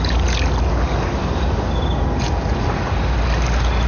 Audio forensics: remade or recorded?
recorded